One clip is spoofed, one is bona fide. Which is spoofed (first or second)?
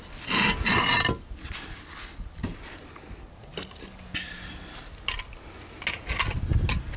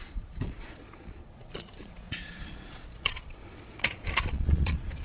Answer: second